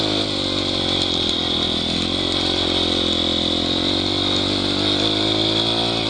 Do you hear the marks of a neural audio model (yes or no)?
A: no